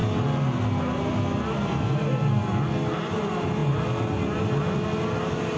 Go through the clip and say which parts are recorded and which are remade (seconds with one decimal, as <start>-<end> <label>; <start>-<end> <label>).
0.0-5.6 recorded